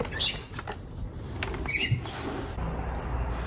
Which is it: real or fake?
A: real